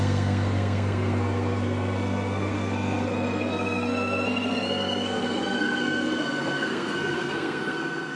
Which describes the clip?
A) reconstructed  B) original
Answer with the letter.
A